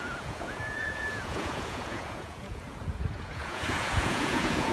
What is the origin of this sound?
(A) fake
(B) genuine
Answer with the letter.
A